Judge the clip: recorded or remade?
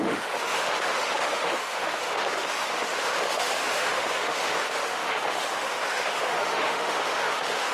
remade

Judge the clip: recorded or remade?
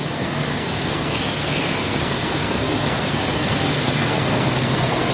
remade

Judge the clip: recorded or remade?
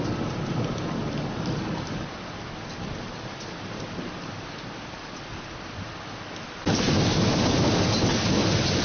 recorded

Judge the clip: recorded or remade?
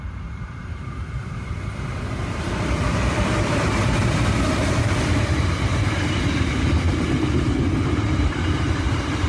remade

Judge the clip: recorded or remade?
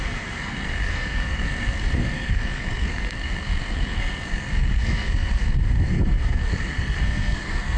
remade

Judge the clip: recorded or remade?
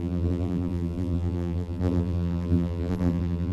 remade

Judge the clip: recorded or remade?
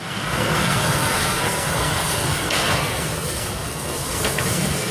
remade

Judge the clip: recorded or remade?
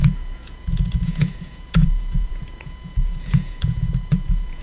remade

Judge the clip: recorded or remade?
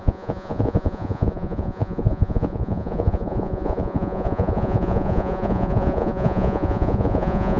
remade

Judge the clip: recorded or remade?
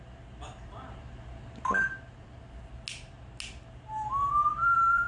recorded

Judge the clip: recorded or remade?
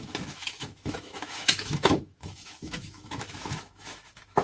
remade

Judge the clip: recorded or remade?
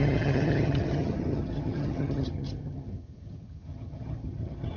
remade